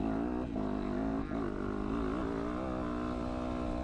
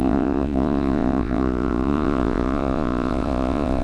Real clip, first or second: first